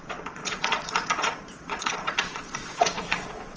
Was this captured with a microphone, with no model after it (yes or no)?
no